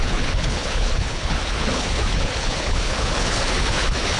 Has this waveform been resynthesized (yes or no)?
yes